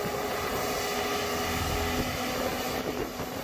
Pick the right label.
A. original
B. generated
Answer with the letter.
A